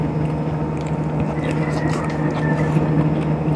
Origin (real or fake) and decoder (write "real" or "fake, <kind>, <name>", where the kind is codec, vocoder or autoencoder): real